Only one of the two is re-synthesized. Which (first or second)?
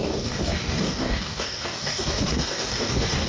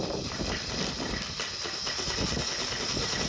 first